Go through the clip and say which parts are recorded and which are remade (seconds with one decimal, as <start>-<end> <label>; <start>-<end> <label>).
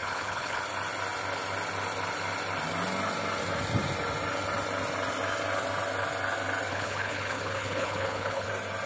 0.0-0.6 remade; 0.6-6.7 recorded; 6.7-8.5 remade; 8.5-8.9 recorded